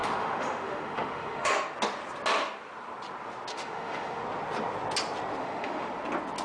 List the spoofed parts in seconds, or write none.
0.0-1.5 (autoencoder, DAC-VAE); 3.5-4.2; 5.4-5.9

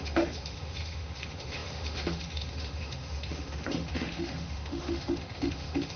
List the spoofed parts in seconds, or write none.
0.0-6.0 (autoencoder, DAC-VAE)

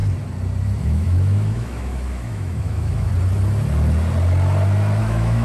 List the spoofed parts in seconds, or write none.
0.8-3.1 (autoencoder, DAC-VAE); 5.0-5.4

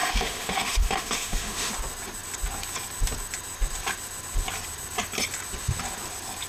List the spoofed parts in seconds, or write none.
0.0-1.7 (autoencoder, DAC-VAE)

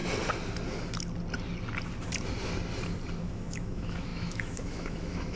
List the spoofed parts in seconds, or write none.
3.2-5.4 (autoencoder, DAC-VAE)

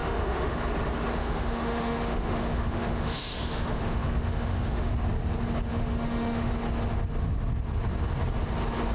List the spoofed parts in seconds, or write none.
0.0-0.6 (autoencoder, DAC-VAE); 1.2-4.9; 5.7-6.5

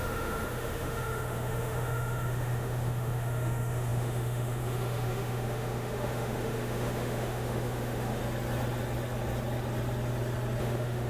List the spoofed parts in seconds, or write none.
0.0-8.2 (autoencoder, DAC-VAE); 10.6-11.1